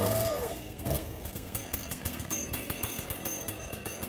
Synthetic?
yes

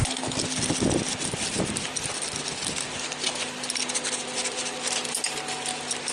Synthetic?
no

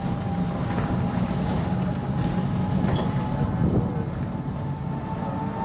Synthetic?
no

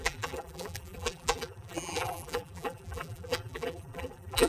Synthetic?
yes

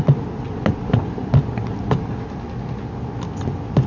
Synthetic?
no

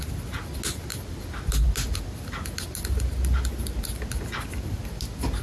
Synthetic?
no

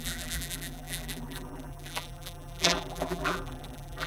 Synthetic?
yes